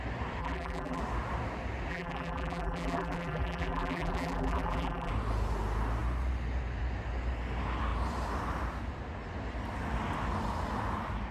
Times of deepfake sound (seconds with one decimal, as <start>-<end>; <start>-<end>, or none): 0.4-1.0; 1.9-5.1